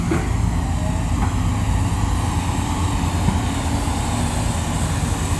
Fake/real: real